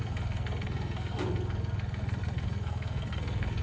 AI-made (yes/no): yes